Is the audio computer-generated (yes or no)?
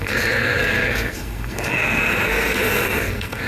yes